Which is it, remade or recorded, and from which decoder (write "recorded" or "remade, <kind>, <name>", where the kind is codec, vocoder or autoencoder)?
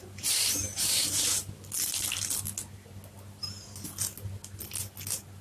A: recorded